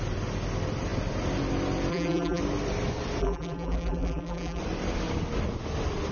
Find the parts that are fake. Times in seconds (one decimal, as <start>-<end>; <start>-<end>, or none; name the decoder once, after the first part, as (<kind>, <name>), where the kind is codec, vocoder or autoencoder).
1.9-2.4 (vocoder, BigVGAN v2); 3.2-4.6